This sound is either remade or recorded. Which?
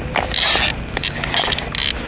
recorded